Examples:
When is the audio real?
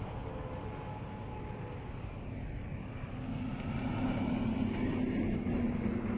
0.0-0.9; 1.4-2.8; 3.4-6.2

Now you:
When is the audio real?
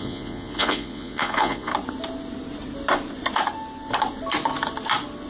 1.7-5.3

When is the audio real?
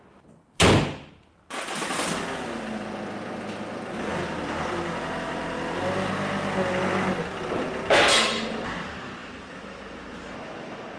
0.0-4.1; 6.1-9.2; 9.8-11.0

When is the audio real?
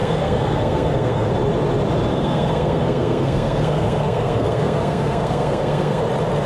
1.3-2.1; 6.0-6.5